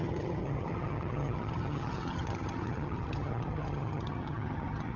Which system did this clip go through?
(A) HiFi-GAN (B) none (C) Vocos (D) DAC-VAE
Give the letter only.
A